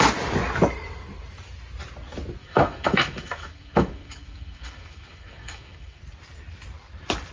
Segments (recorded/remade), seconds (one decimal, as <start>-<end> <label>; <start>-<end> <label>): 0.0-2.4 recorded; 2.4-6.0 remade; 6.0-7.3 recorded